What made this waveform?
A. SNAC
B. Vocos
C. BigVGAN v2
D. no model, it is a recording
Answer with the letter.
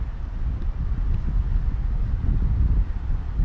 D